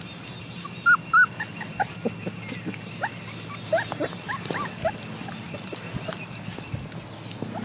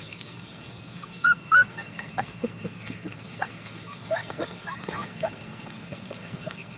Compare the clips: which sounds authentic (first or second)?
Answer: first